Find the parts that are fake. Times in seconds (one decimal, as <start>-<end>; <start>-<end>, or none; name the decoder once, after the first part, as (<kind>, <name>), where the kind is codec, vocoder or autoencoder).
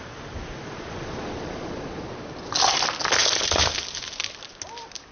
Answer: 0.6-2.1 (vocoder, Vocos)